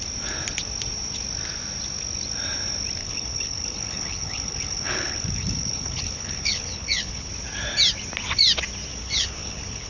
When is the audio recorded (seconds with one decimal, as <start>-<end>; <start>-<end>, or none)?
0.0-3.0; 7.3-8.9